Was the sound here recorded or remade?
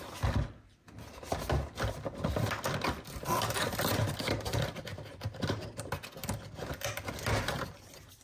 recorded